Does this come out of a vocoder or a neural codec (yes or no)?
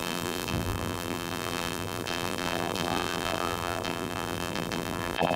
yes